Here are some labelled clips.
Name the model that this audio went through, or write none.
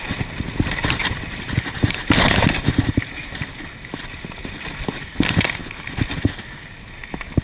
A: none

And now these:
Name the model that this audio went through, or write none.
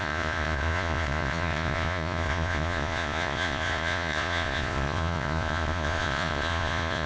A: vocoder, Vocos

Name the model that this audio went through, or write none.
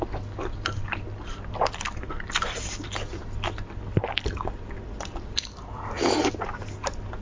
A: none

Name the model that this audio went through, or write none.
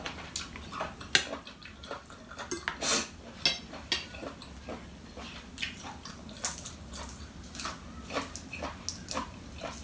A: none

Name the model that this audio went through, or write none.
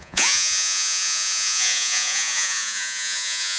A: vocoder, Vocos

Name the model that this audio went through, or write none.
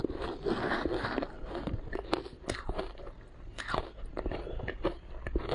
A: none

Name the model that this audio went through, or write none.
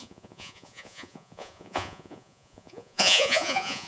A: vocoder, Vocos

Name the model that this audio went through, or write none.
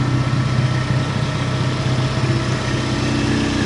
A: none